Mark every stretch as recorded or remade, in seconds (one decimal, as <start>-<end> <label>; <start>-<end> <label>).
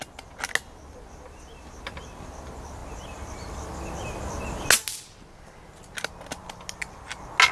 0.0-7.5 recorded